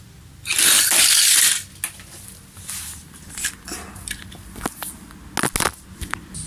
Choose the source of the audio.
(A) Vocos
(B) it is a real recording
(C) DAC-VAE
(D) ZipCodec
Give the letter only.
B